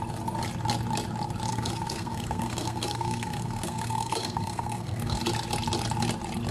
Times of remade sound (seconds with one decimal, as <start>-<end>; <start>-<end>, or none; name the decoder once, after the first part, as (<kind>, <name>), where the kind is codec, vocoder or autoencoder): 1.5-5.2 (codec, SNAC)